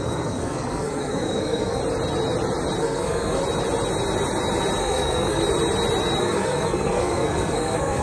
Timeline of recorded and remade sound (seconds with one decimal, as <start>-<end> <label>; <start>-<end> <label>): 0.0-1.8 remade; 1.8-2.8 recorded; 2.8-3.4 remade; 3.4-4.8 recorded; 4.8-5.4 remade; 5.4-6.2 recorded; 6.2-8.0 remade